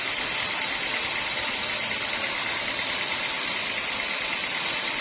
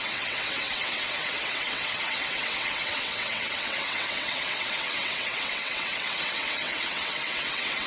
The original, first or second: first